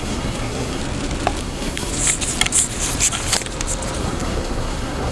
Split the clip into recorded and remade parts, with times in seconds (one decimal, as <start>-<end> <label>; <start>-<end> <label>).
0.0-0.8 remade; 0.8-1.4 recorded; 1.4-1.9 remade; 1.9-4.0 recorded; 4.0-5.1 remade